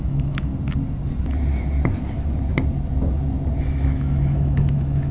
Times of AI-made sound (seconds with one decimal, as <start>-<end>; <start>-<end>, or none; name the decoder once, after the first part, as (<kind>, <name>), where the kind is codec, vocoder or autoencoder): 0.0-0.5 (autoencoder, DAC-VAE); 3.6-5.1